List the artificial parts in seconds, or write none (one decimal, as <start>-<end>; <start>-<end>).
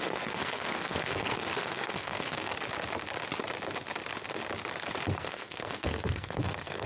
0.0-2.5; 5.1-6.9